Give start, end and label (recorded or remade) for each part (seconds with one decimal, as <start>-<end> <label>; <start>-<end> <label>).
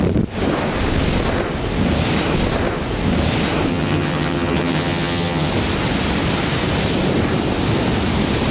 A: 0.0-3.7 recorded; 3.7-5.5 remade; 5.5-8.5 recorded